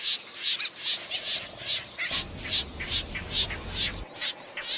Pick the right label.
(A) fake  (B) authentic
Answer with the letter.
B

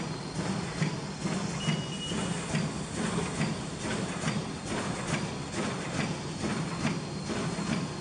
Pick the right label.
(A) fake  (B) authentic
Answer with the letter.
B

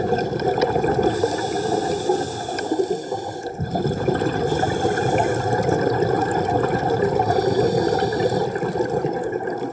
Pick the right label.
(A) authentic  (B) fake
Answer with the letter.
A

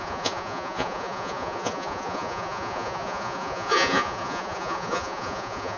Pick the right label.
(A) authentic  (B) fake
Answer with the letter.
B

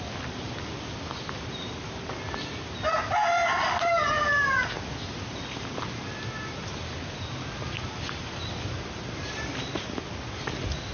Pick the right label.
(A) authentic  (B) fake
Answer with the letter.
A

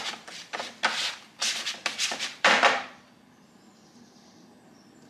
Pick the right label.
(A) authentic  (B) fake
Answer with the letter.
B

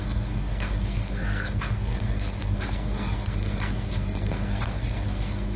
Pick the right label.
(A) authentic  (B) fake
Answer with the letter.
B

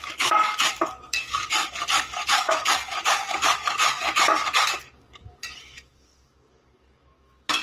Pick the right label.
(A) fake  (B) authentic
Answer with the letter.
A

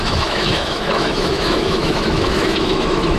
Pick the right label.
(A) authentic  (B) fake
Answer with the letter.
B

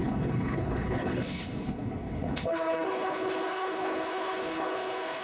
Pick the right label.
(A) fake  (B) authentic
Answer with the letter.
A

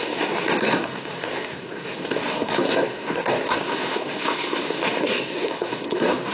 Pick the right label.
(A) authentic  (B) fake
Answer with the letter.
B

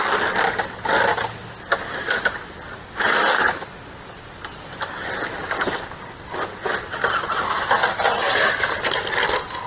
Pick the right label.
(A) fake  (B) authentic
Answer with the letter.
B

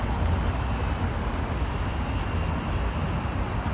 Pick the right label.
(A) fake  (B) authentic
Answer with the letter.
B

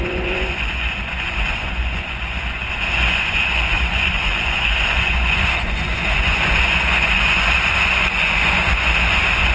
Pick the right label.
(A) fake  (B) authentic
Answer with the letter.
A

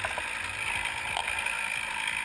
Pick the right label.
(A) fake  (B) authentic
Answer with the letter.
B